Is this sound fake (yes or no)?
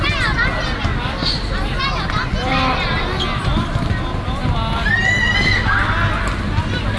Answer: no